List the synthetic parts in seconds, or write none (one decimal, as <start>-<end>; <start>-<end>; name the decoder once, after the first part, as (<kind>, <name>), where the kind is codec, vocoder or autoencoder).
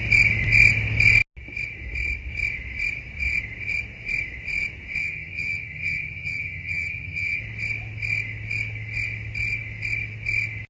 5.0-7.4 (vocoder, HiFi-GAN)